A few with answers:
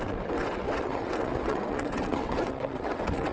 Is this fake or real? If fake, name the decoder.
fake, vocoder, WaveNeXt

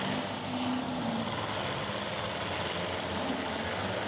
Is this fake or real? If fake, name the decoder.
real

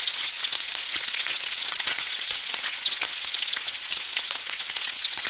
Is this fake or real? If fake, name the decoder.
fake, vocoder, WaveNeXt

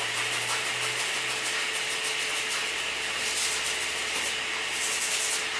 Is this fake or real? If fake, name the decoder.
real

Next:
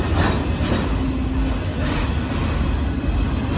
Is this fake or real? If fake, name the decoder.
real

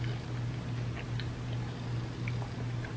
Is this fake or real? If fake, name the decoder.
real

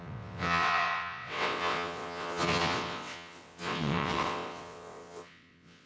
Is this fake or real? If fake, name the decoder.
fake, vocoder, WaveNeXt